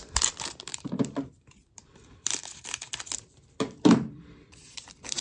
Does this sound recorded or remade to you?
remade